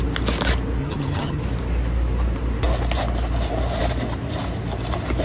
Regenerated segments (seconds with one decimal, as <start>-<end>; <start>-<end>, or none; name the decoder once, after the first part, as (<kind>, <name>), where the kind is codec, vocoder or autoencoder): 0.8-1.4 (vocoder, HiFi-GAN)